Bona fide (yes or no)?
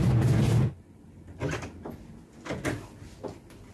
yes